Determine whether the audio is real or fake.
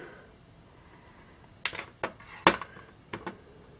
real